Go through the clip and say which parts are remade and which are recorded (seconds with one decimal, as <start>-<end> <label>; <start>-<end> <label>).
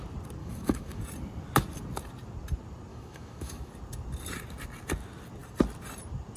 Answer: 0.0-0.4 recorded; 0.4-1.0 remade; 1.0-2.9 recorded; 2.9-3.7 remade; 3.7-6.4 recorded